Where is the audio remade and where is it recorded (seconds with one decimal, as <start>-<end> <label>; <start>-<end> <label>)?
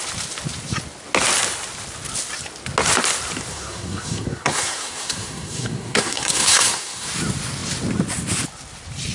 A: 0.0-3.5 recorded; 3.5-7.1 remade; 7.1-9.1 recorded